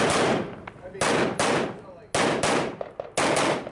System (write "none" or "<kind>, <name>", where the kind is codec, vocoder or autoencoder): none